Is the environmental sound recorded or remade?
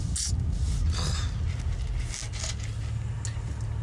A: recorded